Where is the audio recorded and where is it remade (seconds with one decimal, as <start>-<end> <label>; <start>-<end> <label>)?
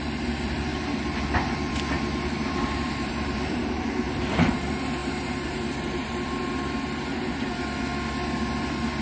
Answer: 0.0-0.7 recorded; 0.7-3.9 remade; 3.9-5.0 recorded; 5.0-6.4 remade; 6.4-9.0 recorded